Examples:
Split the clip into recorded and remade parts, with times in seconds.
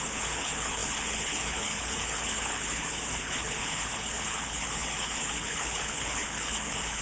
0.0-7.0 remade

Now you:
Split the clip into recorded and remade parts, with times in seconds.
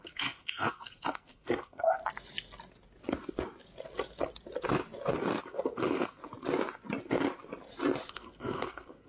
0.0-2.0 remade; 2.0-5.4 recorded; 5.4-6.2 remade; 6.2-8.1 recorded; 8.1-9.1 remade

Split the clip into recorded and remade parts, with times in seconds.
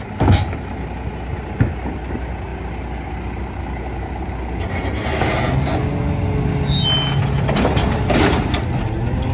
0.0-9.3 recorded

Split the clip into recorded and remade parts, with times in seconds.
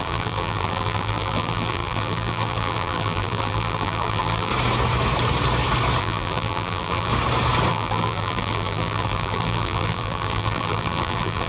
0.0-4.5 remade; 4.5-6.0 recorded; 6.0-7.1 remade; 7.1-7.7 recorded; 7.7-11.5 remade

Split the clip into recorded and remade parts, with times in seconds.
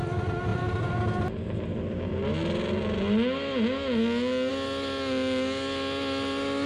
0.0-6.7 recorded